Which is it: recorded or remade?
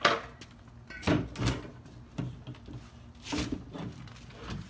recorded